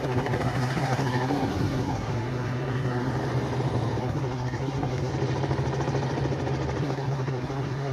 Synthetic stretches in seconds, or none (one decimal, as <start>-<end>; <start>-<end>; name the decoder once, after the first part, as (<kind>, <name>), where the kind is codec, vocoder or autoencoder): 0.0-3.1 (codec, SNAC); 4.0-5.1; 6.8-7.9